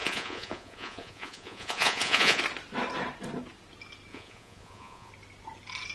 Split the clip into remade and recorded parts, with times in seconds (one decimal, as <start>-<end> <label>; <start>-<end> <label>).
0.0-2.4 remade; 2.4-4.1 recorded; 4.1-5.1 remade; 5.1-5.9 recorded